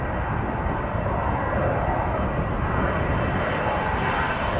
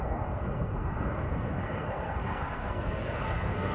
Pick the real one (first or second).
first